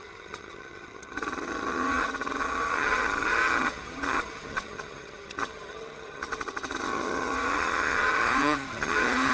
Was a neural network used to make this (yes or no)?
yes